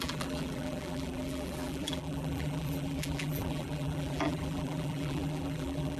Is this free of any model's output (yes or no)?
no